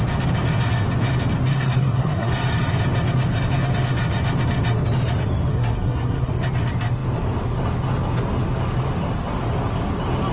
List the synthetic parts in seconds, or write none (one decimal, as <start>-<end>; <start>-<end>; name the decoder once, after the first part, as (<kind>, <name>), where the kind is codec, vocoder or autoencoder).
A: 1.5-2.3 (codec, SNAC); 5.5-6.3